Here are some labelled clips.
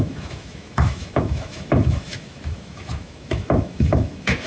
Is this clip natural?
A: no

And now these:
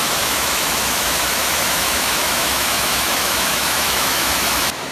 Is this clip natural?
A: no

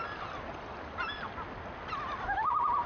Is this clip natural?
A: yes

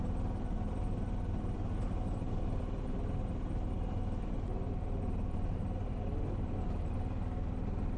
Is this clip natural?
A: yes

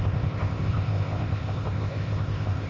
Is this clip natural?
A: no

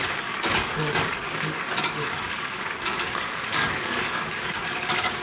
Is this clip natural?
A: no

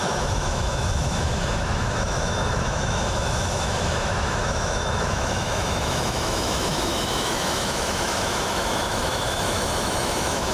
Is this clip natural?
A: no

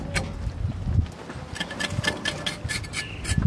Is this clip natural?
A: yes